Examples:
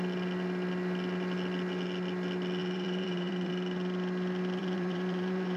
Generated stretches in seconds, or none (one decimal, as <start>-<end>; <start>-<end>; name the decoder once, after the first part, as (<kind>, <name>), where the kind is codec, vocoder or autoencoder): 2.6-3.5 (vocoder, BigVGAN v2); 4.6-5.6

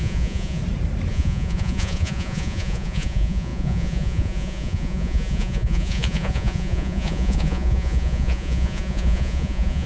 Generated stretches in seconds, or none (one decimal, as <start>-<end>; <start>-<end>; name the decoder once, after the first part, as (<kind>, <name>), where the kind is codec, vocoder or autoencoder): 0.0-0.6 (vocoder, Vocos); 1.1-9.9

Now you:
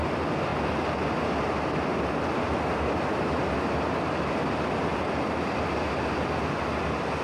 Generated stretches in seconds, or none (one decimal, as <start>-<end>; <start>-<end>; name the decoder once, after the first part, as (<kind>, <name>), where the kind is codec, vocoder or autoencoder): none

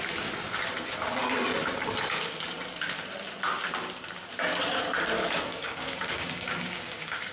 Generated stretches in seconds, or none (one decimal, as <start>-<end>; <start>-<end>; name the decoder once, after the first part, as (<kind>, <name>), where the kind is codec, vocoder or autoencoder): 5.2-7.3 (codec, DAC)